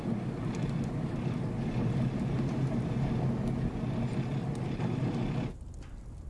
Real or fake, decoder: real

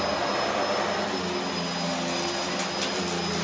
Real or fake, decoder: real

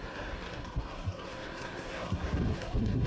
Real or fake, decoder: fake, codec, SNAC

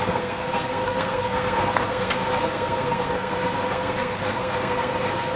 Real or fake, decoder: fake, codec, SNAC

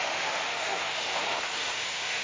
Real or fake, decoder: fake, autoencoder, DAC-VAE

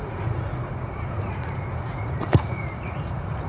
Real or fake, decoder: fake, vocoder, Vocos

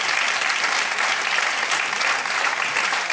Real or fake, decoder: fake, vocoder, BigVGAN v2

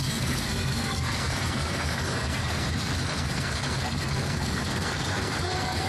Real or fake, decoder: fake, codec, SNAC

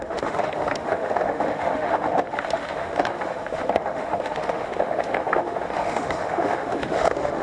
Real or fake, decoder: fake, autoencoder, DAC-VAE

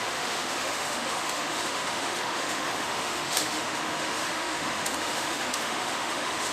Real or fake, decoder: fake, autoencoder, DAC-VAE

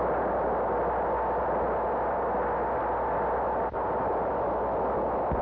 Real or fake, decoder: real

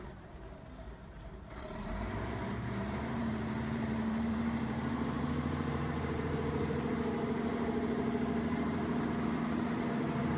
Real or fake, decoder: fake, vocoder, BigVGAN v2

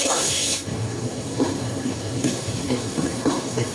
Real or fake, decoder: fake, codec, SNAC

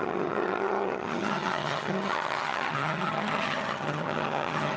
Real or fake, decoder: fake, vocoder, HiFi-GAN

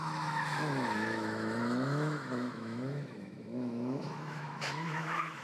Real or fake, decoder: fake, autoencoder, DAC-VAE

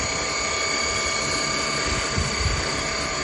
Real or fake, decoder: real